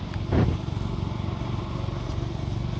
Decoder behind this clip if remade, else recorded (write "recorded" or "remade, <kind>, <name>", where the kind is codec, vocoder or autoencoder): recorded